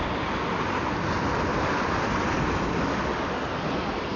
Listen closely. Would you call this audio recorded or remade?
recorded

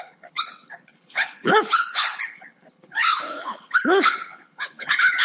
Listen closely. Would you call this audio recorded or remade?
remade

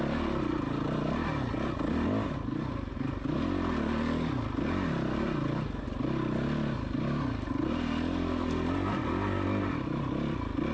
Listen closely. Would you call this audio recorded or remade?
recorded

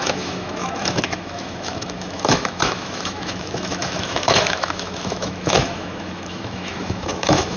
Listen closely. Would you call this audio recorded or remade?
remade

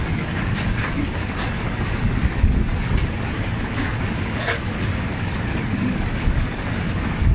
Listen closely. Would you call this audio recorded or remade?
remade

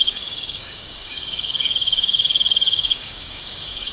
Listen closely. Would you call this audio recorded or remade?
remade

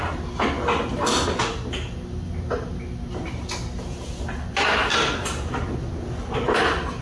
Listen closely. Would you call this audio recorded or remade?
recorded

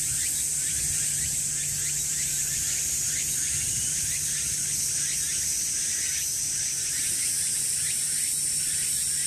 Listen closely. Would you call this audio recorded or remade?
recorded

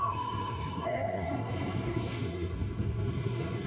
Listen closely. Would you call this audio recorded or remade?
remade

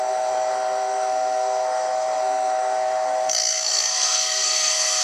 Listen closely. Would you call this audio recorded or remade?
remade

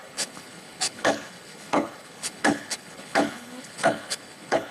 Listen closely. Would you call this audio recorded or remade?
remade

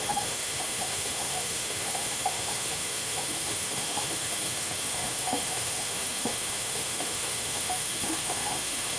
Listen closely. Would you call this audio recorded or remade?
remade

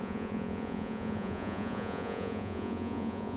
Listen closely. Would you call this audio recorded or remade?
remade